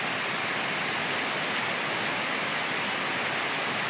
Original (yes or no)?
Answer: yes